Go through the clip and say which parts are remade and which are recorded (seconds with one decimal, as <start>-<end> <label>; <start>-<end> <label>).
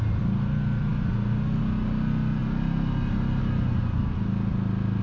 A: 0.0-5.0 recorded